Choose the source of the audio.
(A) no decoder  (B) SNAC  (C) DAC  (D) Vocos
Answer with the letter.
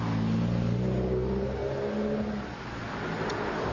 A